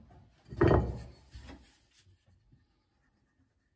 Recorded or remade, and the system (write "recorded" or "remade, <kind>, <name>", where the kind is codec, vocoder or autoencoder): recorded